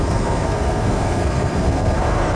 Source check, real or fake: fake